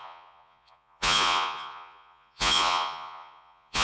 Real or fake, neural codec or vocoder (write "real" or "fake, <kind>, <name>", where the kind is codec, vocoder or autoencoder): fake, vocoder, Vocos